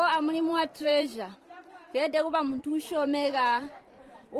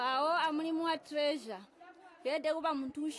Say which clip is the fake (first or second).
first